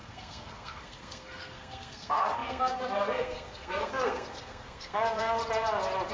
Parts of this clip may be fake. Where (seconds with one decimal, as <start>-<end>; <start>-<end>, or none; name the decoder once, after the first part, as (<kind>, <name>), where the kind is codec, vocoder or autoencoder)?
0.0-5.4 (codec, SNAC)